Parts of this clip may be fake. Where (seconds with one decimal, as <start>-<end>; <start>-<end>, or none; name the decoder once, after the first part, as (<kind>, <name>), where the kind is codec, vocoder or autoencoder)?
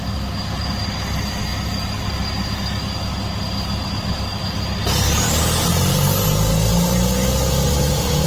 none